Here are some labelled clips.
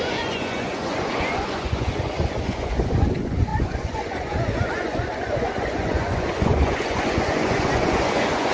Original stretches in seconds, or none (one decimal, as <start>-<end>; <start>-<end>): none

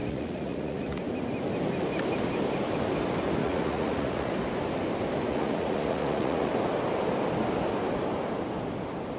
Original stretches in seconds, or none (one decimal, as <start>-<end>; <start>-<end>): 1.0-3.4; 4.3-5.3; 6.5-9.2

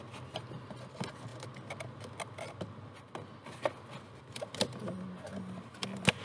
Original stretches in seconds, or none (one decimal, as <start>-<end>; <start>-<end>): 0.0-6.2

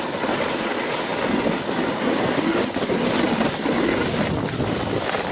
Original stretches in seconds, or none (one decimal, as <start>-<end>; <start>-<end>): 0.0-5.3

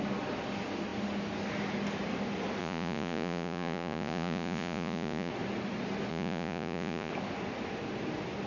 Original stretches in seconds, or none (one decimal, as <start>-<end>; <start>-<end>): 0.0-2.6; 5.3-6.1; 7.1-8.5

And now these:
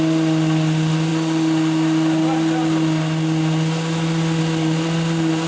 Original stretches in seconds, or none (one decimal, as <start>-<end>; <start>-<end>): 0.0-5.5

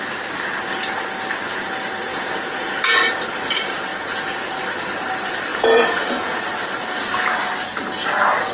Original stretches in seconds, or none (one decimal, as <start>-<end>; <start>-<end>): 0.0-2.1; 3.1-3.9; 4.5-5.5; 6.4-8.5

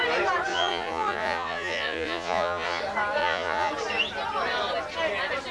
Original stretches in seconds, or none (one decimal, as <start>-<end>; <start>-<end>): 0.0-0.5; 2.8-3.2; 3.7-5.5